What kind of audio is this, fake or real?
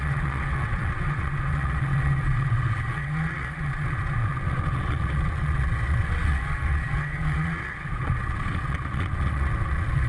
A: fake